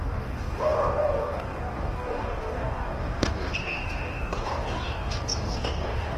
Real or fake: fake